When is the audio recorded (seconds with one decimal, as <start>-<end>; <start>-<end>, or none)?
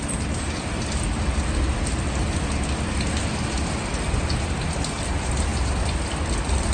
0.0-6.7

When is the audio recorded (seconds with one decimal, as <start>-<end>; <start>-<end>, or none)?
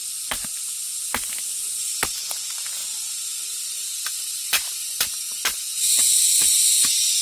0.0-7.2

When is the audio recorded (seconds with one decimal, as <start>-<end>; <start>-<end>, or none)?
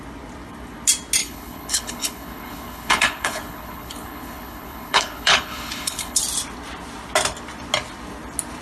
0.0-1.2; 6.2-8.6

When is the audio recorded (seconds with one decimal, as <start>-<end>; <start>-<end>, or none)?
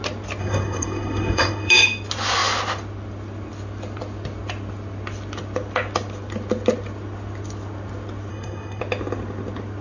0.0-0.4; 1.7-8.3; 8.8-9.8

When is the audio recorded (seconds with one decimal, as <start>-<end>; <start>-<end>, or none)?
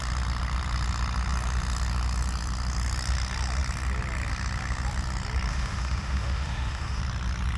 0.0-5.5; 7.0-7.6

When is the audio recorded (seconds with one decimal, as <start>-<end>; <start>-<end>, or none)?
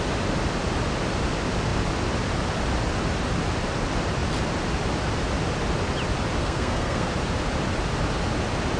0.0-6.4; 7.1-8.8